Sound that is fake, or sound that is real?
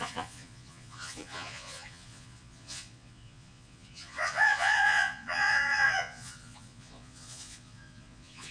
fake